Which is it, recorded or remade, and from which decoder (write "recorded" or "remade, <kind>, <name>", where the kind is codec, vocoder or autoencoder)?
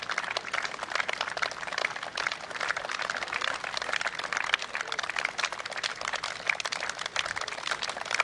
recorded